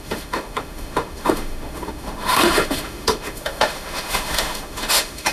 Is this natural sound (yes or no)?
no